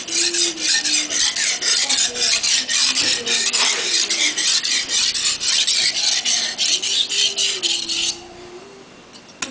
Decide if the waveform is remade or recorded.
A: recorded